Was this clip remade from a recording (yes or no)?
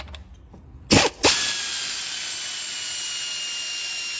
no